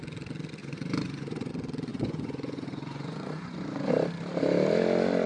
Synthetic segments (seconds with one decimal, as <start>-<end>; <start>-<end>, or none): 0.6-1.5; 1.9-3.9